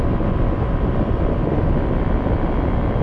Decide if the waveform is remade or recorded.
recorded